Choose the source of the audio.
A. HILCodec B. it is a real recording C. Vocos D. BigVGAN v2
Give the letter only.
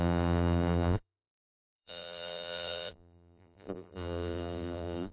D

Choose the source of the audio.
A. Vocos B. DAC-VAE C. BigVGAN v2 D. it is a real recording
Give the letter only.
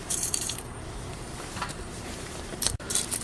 C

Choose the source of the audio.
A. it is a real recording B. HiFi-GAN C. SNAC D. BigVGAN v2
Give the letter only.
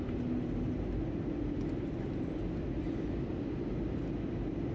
A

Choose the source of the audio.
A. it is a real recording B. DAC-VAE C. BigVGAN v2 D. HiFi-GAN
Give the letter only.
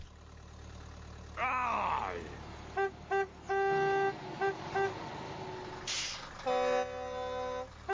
A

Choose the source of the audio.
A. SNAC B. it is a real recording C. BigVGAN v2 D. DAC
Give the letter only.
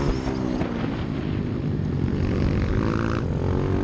B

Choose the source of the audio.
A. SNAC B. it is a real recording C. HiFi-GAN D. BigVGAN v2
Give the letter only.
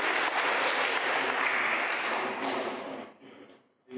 B